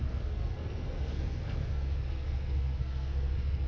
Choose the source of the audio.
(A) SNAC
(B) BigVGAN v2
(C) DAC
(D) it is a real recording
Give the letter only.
A